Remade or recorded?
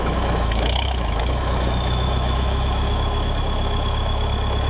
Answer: remade